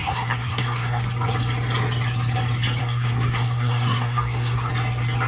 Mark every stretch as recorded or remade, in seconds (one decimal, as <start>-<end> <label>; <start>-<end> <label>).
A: 0.0-1.0 remade; 1.0-2.8 recorded; 2.8-4.7 remade; 4.7-5.3 recorded